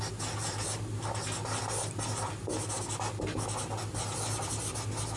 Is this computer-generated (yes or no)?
no